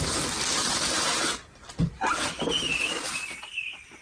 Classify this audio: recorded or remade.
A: recorded